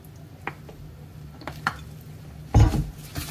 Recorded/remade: recorded